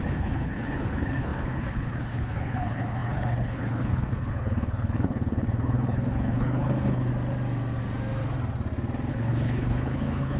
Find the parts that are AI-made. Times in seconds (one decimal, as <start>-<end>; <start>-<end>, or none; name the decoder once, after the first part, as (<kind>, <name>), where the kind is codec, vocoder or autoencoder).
0.0-7.1 (codec, HILCodec); 9.1-10.4